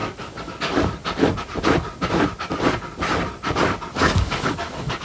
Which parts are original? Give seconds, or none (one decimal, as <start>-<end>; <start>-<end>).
1.0-4.0